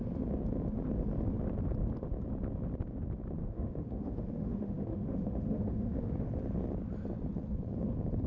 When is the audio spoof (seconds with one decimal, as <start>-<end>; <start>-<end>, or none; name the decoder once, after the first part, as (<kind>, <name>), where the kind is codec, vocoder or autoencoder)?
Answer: 3.4-6.3 (autoencoder, DAC-VAE)